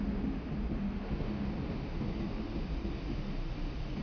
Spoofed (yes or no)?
no